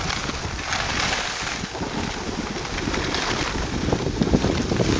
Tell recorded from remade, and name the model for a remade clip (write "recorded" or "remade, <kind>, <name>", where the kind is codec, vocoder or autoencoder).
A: recorded